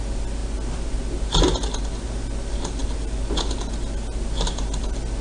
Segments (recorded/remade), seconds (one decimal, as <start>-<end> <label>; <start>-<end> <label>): 0.0-5.2 recorded